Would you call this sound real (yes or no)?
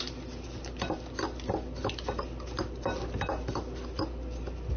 yes